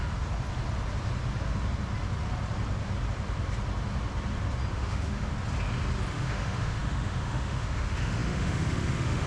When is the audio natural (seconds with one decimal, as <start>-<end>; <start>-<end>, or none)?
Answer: 0.0-4.7; 5.3-6.1